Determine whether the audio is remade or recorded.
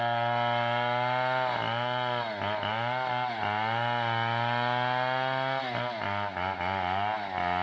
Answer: recorded